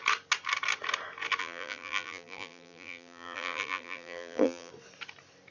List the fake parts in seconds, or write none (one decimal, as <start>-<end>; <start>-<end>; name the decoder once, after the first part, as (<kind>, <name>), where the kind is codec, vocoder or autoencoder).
1.4-4.7 (vocoder, BigVGAN v2)